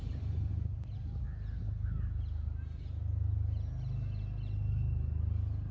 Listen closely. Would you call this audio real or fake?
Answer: real